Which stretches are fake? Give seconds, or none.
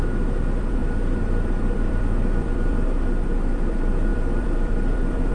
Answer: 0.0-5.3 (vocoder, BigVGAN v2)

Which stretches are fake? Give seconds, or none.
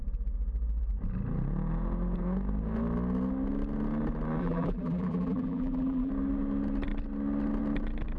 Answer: 4.4-6.1 (vocoder, BigVGAN v2)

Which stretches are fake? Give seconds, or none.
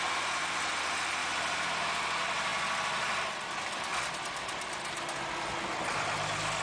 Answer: 1.2-1.7 (vocoder, BigVGAN v2)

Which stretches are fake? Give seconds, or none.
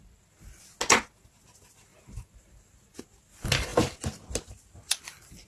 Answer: 1.9-3.0 (vocoder, BigVGAN v2)